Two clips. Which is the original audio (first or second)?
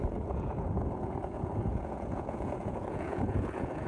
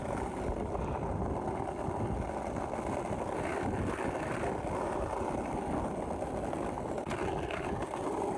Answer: second